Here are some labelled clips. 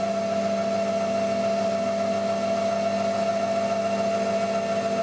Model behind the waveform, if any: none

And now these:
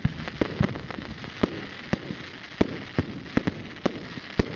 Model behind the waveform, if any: none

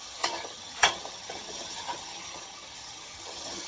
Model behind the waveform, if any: vocoder, HiFi-GAN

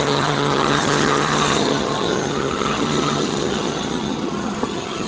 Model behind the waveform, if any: vocoder, HiFi-GAN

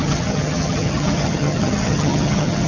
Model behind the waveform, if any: vocoder, HiFi-GAN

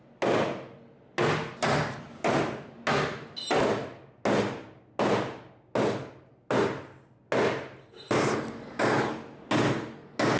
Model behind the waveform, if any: none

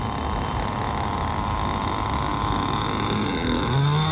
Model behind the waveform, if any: none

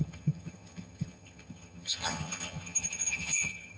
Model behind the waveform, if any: vocoder, HiFi-GAN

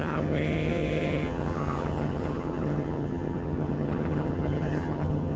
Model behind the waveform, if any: vocoder, HiFi-GAN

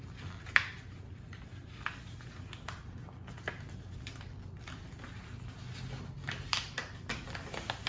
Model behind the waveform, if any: none